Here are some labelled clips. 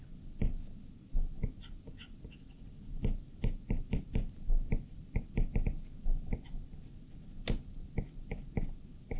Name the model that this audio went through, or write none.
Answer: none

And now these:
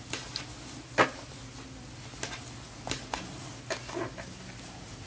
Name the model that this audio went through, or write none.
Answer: none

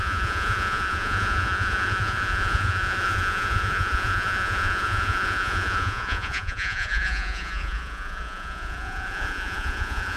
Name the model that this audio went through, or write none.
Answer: vocoder, Vocos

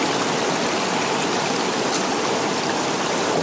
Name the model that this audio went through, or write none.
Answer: none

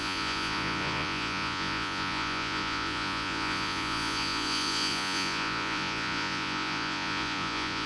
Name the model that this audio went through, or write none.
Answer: vocoder, Vocos